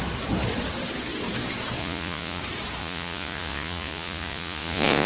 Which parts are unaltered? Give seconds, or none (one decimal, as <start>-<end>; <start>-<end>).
0.0-1.8; 2.4-2.8